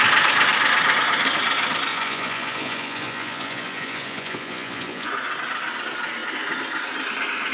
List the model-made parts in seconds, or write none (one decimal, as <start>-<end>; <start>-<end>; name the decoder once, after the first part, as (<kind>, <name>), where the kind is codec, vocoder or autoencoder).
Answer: 1.9-5.1 (vocoder, Vocos)